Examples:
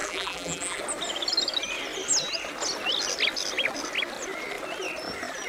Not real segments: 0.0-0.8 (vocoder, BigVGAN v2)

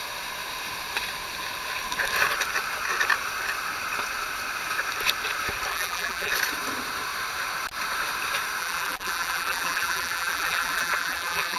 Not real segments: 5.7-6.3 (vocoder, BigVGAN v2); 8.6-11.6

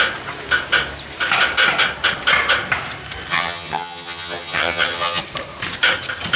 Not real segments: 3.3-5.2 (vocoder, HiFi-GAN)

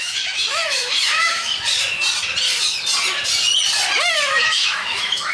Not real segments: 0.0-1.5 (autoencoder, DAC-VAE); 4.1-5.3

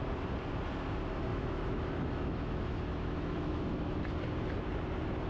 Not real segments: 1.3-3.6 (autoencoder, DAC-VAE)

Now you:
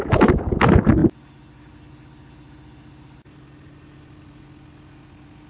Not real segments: none

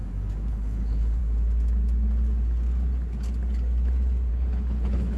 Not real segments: 0.5-1.2 (codec, HILCodec); 4.3-5.2